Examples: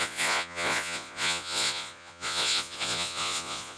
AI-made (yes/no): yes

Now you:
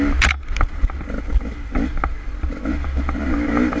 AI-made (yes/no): no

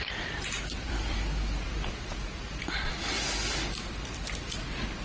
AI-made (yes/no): yes